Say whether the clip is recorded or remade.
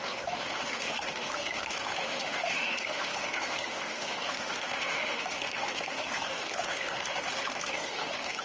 remade